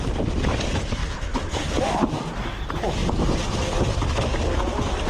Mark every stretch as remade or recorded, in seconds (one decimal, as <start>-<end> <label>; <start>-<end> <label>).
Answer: 0.0-5.1 recorded